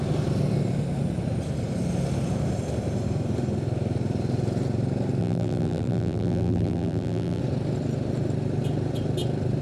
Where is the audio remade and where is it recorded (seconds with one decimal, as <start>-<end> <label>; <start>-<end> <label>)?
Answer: 0.0-5.2 recorded; 5.2-7.4 remade; 7.4-9.6 recorded